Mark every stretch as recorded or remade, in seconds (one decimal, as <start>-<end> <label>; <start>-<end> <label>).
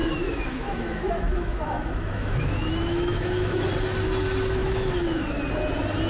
0.0-3.7 remade; 3.7-4.6 recorded; 4.6-5.2 remade; 5.2-6.1 recorded